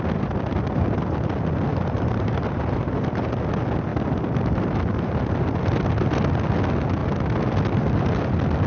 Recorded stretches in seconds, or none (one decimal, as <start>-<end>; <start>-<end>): 0.0-1.7; 3.3-8.7